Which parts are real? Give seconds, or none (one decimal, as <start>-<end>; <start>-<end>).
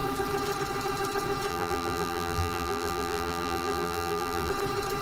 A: 0.0-1.5; 4.5-5.0